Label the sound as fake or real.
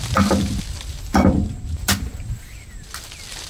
real